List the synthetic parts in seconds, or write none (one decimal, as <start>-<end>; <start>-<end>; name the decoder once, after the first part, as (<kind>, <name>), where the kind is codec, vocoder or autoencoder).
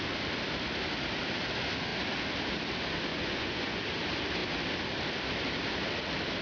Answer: 3.1-3.8 (vocoder, Vocos)